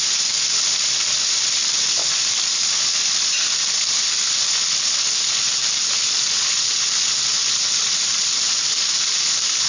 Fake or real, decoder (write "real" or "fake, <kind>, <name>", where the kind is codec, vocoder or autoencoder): real